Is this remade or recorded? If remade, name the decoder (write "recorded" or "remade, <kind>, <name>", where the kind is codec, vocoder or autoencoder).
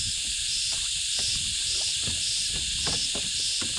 recorded